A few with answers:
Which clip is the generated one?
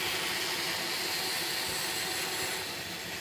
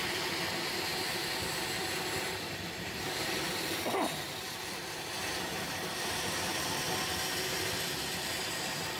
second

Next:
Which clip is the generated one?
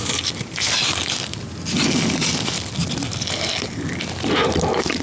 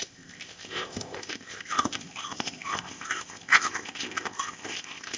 second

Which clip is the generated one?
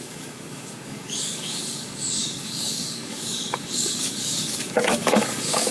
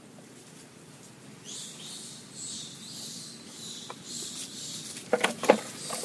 first